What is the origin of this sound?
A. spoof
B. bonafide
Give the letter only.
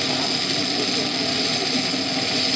B